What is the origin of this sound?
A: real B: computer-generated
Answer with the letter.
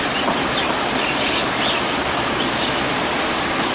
A